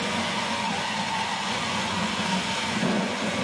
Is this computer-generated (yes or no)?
yes